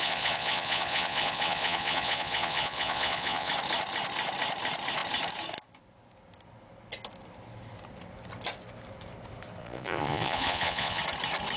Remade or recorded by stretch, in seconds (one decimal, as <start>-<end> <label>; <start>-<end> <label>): 0.0-3.5 remade; 3.5-9.6 recorded; 9.6-11.0 remade; 11.0-11.6 recorded